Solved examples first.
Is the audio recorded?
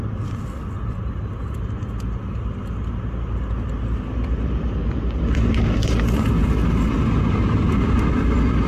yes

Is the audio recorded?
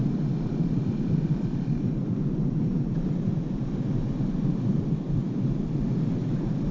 yes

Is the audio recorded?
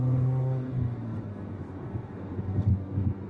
no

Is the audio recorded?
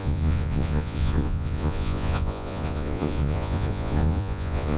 no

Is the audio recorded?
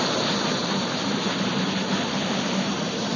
no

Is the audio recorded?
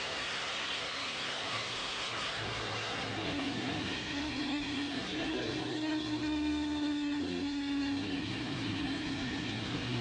no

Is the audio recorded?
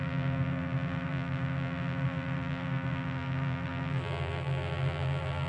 no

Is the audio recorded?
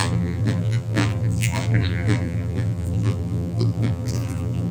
no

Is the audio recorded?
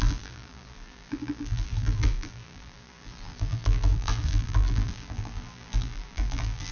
no